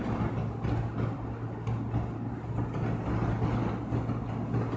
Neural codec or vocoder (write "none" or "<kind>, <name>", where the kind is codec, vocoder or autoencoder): none